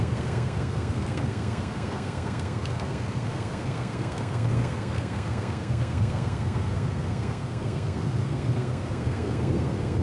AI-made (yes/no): yes